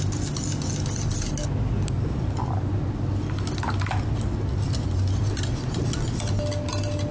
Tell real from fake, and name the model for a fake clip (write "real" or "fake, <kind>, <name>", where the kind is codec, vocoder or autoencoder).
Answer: real